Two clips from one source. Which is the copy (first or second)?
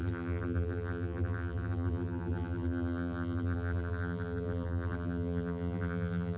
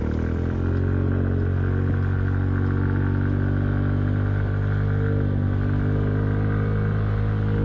first